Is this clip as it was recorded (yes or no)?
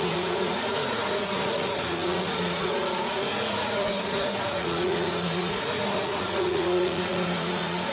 no